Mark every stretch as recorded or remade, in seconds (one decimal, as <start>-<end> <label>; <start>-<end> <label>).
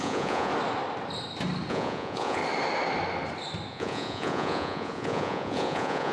0.0-0.5 remade; 0.5-1.7 recorded; 1.7-2.4 remade; 2.4-3.7 recorded; 3.7-6.1 remade